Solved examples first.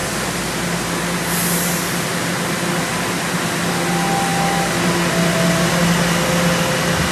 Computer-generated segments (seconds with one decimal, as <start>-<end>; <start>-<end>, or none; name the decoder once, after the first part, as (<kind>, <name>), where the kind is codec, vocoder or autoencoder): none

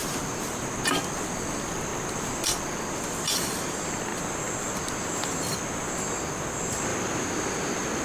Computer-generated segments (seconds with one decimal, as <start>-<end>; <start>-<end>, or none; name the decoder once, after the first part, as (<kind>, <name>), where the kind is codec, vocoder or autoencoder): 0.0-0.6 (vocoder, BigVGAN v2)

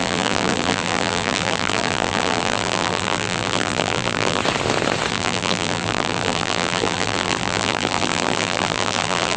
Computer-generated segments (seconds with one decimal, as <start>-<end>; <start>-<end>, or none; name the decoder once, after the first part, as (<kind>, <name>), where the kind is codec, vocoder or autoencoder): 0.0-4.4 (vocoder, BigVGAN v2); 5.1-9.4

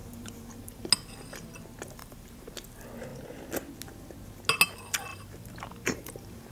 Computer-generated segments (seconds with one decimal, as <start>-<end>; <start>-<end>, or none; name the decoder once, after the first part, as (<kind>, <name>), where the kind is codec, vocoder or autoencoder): 0.0-0.9 (vocoder, BigVGAN v2); 2.0-2.5; 5.1-6.5

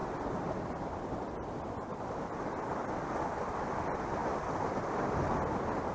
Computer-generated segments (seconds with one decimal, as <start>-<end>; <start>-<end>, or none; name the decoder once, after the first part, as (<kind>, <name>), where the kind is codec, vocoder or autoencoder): 0.0-0.9 (vocoder, BigVGAN v2); 4.2-5.3